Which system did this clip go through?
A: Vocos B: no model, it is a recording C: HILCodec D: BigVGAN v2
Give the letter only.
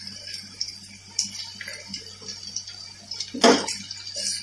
B